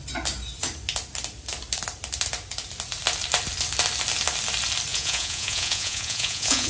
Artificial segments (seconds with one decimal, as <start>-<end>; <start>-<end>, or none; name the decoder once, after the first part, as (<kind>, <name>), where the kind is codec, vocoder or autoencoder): 4.9-6.7 (vocoder, Vocos)